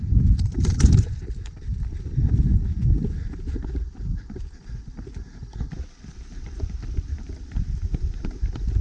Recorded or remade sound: recorded